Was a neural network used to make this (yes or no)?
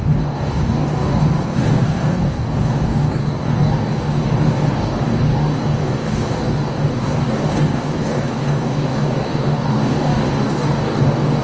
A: yes